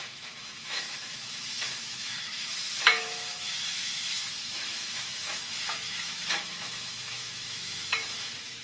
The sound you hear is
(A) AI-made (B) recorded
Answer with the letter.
A